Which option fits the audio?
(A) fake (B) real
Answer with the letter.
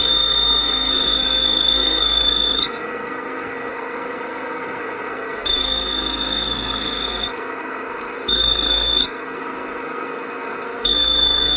A